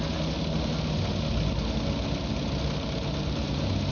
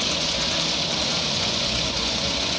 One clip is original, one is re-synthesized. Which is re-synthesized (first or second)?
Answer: second